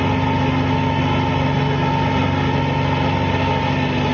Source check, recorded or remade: recorded